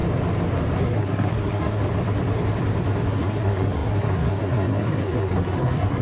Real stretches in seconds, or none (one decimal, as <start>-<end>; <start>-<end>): 0.0-0.8; 1.8-3.1